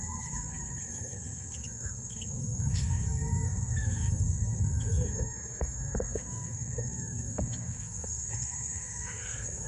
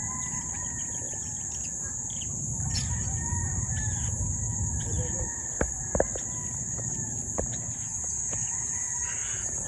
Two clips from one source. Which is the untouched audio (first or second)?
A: second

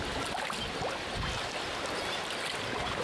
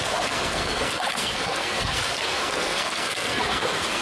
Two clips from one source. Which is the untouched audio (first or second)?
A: first